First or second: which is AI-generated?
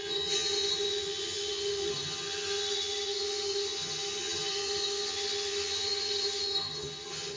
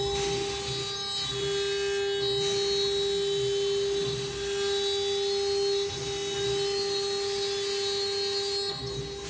first